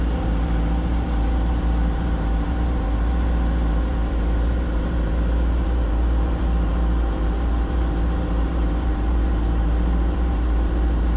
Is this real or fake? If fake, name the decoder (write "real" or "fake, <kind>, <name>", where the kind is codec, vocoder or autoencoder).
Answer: fake, vocoder, BigVGAN v2